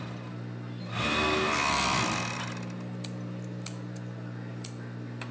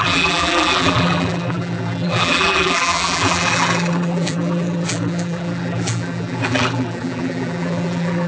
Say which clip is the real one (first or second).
first